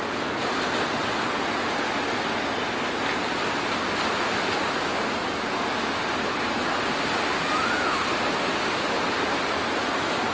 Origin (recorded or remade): recorded